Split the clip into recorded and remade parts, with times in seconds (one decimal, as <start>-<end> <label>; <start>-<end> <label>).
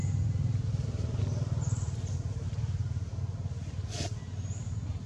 0.0-5.1 recorded